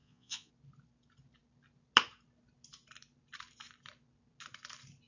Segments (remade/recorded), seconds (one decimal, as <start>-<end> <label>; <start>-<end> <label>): 0.0-0.5 remade; 0.5-5.1 recorded